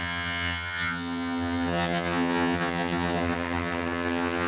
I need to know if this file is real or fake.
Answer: fake